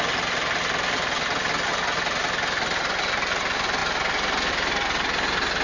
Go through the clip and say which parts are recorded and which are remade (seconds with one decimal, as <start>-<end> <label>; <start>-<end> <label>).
0.0-5.6 recorded